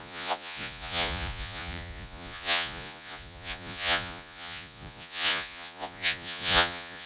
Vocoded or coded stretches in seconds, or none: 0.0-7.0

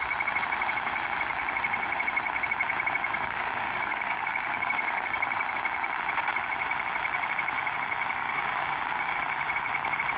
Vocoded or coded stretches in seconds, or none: 3.1-5.4; 8.2-9.2

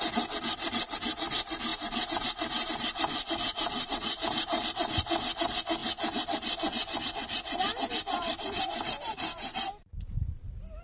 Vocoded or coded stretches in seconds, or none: 1.7-4.6; 8.1-10.1

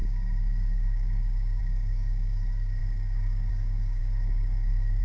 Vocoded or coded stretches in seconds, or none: 0.0-5.0

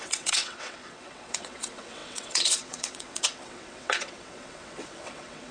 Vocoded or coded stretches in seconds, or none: 0.0-5.5

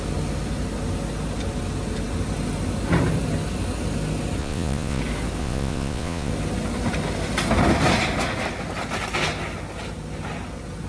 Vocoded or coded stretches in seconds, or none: 4.4-5.0; 5.4-6.3

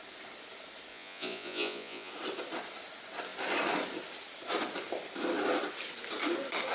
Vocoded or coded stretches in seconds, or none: 0.9-2.1